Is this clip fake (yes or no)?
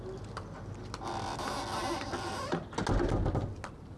no